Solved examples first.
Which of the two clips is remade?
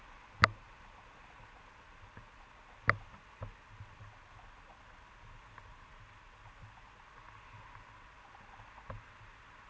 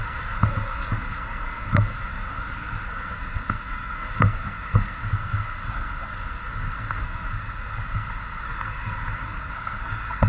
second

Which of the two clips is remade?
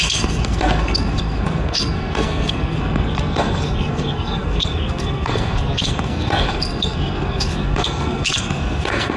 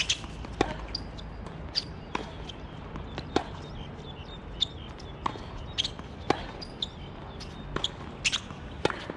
first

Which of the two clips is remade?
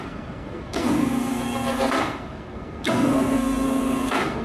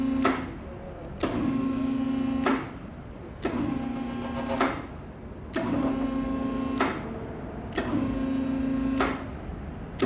first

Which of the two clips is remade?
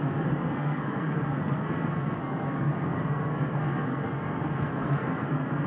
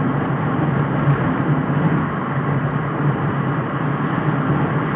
first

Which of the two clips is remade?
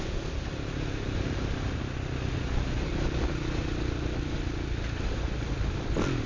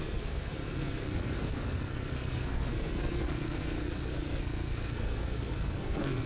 second